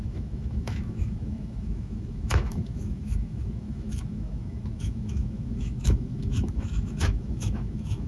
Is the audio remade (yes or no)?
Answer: yes